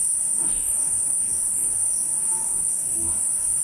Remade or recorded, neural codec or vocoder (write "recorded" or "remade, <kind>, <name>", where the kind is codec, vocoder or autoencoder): remade, codec, DAC